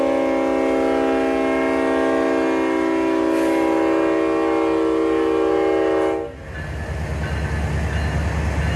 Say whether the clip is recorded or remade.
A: recorded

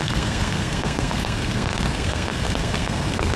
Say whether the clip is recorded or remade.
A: remade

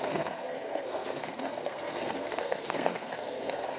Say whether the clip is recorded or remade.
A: remade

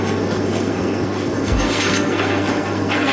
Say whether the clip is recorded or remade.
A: remade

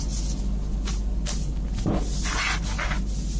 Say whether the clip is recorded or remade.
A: recorded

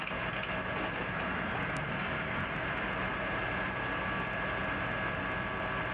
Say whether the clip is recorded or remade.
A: recorded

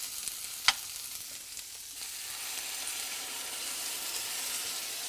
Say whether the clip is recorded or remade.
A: recorded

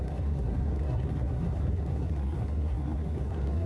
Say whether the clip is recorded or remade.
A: remade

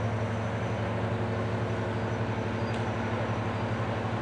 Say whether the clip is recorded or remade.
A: recorded